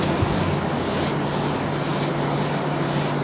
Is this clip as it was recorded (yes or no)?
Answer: yes